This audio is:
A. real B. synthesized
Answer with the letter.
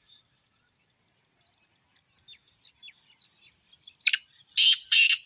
A